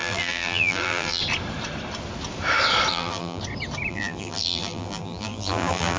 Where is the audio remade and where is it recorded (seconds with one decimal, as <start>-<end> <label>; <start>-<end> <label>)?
0.0-1.2 remade; 1.2-2.9 recorded; 2.9-3.4 remade; 3.4-3.9 recorded; 3.9-6.0 remade